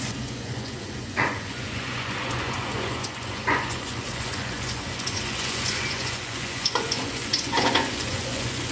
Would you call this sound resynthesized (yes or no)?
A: yes